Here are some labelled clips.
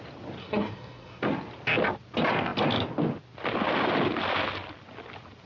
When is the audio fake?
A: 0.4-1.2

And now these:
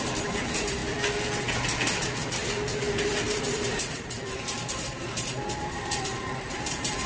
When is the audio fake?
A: 0.0-0.8; 3.4-7.1